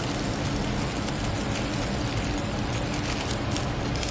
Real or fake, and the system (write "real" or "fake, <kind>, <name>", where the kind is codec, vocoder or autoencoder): real